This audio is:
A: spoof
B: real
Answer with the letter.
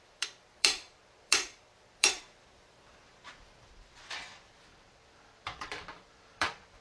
A